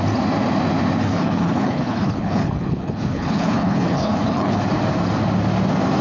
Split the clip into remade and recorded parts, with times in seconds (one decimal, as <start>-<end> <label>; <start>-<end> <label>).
0.0-1.0 recorded; 1.0-4.6 remade; 4.6-6.0 recorded